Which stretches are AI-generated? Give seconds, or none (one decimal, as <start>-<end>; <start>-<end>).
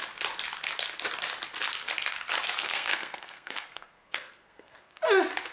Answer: 2.6-5.0